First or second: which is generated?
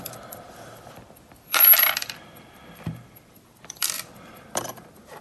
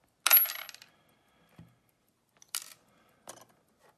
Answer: first